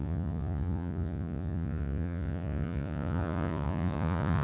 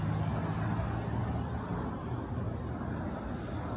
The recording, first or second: second